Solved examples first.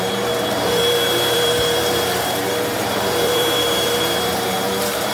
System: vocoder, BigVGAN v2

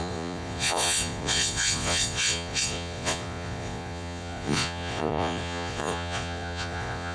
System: vocoder, Vocos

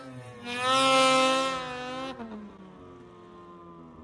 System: none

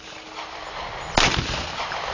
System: none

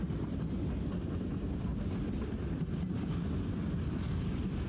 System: none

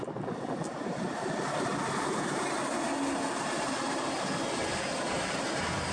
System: none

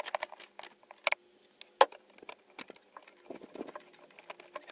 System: none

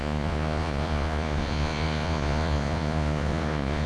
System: vocoder, Vocos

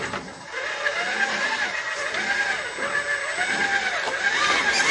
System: none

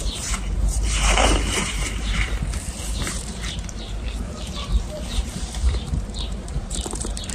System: vocoder, BigVGAN v2